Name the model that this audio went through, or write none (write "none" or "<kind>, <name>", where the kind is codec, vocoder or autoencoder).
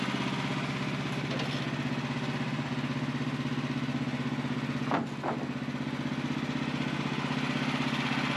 none